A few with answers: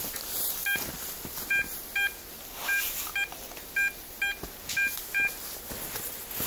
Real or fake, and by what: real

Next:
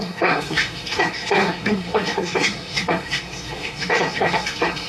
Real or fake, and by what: fake, codec, SNAC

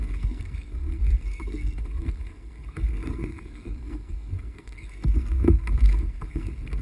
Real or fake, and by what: fake, codec, SNAC